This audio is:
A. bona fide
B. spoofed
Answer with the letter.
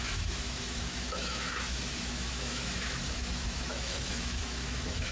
B